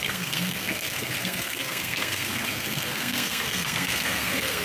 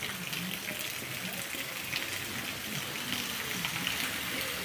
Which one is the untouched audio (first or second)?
second